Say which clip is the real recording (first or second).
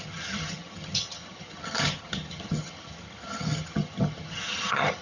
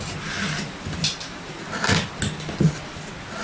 second